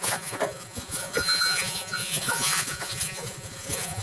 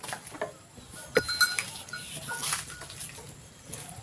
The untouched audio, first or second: second